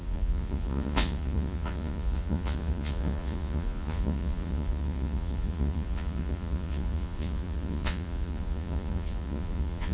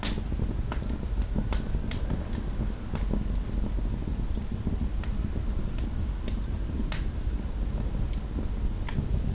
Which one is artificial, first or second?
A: first